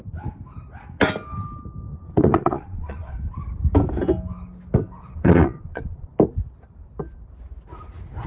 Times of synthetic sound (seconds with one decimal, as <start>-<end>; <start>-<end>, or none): 1.9-3.1; 5.0-6.2